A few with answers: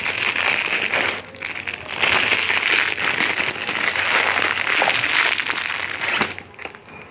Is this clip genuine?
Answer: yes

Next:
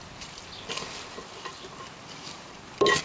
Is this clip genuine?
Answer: yes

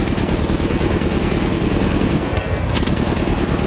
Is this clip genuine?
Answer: no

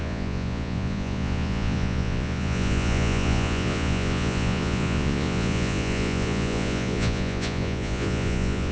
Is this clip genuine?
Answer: no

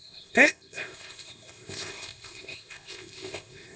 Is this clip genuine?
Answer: no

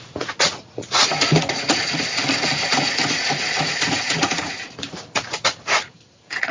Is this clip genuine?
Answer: no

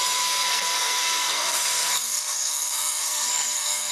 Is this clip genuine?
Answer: no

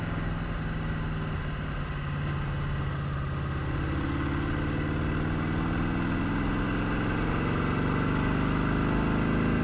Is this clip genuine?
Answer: yes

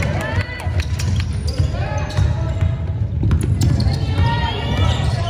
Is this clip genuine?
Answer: yes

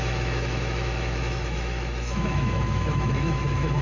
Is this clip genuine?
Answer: no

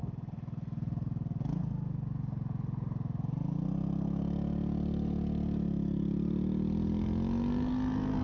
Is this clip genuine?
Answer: yes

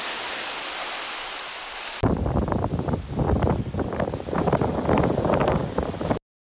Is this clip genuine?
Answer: yes